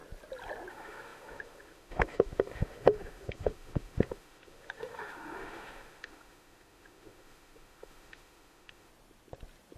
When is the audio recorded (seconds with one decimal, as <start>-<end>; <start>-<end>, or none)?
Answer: 0.0-0.7; 8.9-9.8